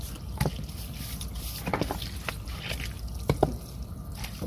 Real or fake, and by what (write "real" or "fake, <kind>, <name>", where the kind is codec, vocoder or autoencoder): real